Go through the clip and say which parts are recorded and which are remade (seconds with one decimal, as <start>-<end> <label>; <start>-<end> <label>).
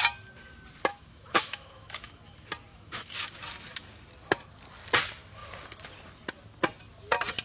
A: 0.0-0.9 recorded; 0.9-2.2 remade; 2.2-2.7 recorded; 2.7-3.4 remade; 3.4-7.4 recorded